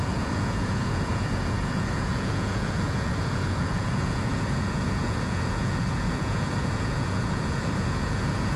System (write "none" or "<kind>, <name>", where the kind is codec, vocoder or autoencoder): vocoder, Vocos